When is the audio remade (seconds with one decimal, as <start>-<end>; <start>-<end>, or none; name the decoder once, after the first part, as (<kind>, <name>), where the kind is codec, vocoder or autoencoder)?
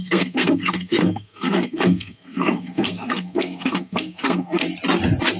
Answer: 0.0-4.6 (codec, SNAC)